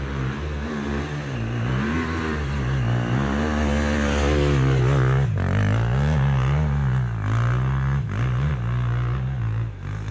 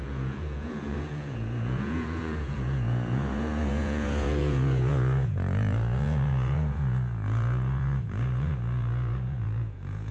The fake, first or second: second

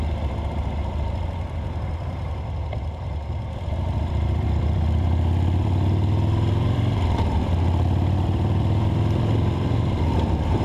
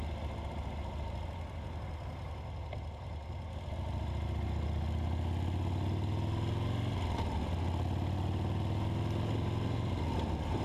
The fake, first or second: first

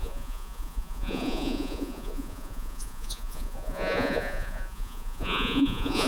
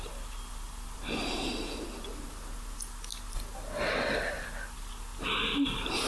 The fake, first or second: first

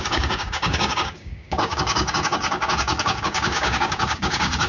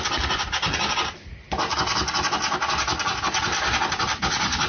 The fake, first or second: first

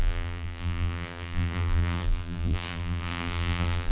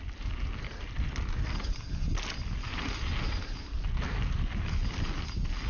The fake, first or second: first